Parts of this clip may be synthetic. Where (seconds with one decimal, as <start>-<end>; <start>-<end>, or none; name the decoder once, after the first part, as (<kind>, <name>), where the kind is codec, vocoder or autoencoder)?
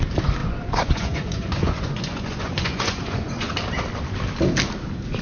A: 0.4-3.5 (vocoder, Vocos)